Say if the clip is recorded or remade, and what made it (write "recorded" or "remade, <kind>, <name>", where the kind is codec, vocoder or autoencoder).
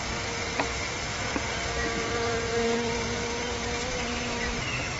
recorded